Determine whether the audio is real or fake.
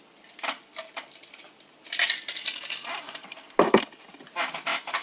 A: real